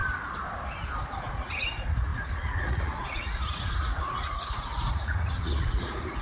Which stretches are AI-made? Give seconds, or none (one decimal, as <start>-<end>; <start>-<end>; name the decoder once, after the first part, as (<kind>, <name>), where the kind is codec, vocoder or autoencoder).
1.2-6.2 (vocoder, Vocos)